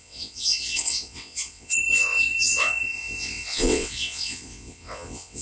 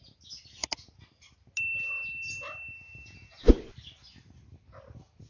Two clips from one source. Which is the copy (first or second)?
first